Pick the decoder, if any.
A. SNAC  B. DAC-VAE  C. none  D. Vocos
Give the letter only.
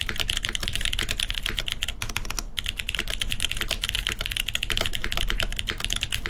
C